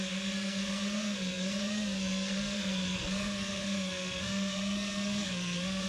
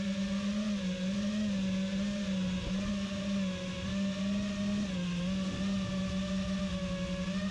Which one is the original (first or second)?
second